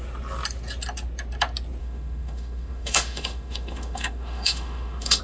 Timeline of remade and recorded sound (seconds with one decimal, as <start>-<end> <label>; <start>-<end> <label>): 0.0-1.8 recorded; 1.8-5.2 remade